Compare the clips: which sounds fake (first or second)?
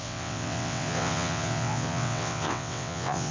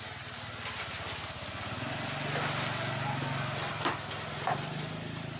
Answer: first